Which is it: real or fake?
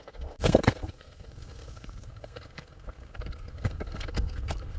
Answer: fake